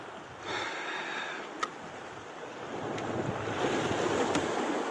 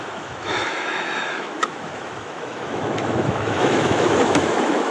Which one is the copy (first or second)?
second